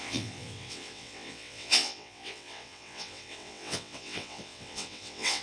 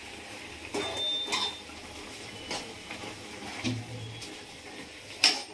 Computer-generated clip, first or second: first